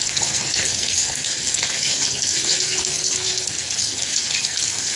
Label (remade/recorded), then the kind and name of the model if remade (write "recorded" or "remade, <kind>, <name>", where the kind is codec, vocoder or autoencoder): remade, codec, SNAC